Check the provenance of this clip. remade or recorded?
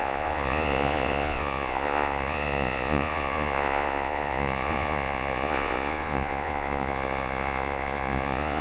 remade